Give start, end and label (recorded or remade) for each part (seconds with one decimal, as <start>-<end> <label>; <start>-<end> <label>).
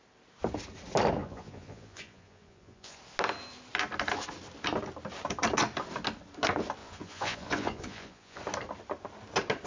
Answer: 0.0-1.2 recorded; 1.2-3.0 remade; 3.0-6.8 recorded; 6.8-8.4 remade; 8.4-9.7 recorded